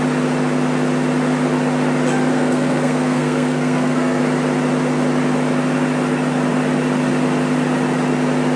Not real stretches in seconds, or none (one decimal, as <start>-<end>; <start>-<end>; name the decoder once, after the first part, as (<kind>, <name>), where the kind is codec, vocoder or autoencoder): 2.3-4.2 (codec, SNAC)